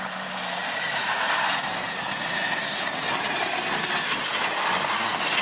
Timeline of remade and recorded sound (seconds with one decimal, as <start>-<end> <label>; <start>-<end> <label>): 0.0-5.4 recorded